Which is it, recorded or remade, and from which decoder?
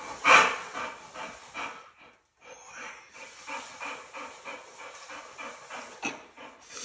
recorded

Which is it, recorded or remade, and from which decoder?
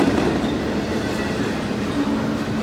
recorded